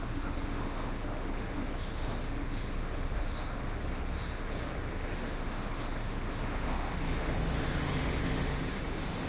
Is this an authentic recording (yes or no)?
no